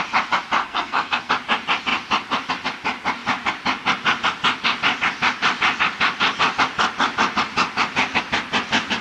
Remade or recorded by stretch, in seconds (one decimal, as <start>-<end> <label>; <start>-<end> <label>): 0.0-0.6 recorded; 0.6-1.3 remade; 1.3-9.0 recorded